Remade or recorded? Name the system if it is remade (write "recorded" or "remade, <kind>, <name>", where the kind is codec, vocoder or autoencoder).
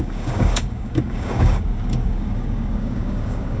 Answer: remade, codec, DAC